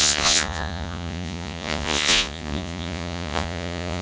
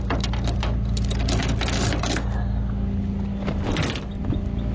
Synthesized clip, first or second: first